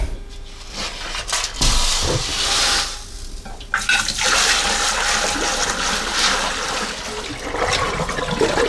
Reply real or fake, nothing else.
real